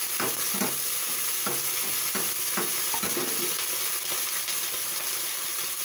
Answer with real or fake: real